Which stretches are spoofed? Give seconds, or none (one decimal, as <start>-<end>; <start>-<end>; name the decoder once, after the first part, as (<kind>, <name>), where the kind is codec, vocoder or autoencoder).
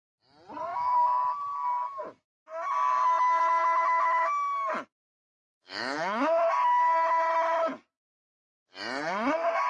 0.7-1.2 (autoencoder, DAC-VAE); 5.2-6.5